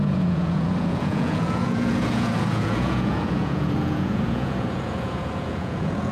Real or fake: fake